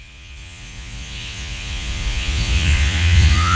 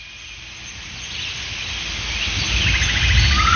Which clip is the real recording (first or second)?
second